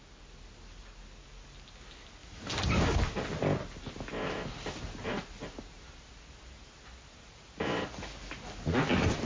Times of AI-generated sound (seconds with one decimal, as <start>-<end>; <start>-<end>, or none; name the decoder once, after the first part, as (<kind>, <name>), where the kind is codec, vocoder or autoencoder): none